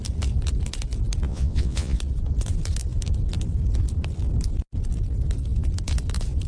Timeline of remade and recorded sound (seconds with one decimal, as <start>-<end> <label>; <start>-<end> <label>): 0.0-1.3 recorded; 1.3-2.0 remade; 2.0-6.5 recorded